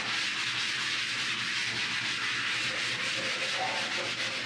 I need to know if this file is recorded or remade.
recorded